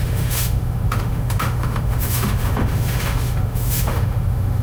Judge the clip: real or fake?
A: fake